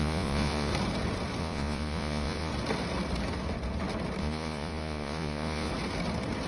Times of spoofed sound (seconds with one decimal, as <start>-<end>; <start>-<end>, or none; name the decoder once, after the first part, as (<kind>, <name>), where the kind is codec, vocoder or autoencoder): 0.0-0.7 (vocoder, Vocos); 1.4-2.5; 4.2-5.7